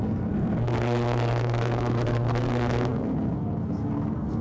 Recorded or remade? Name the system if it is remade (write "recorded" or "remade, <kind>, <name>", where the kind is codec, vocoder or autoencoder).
remade, codec, SNAC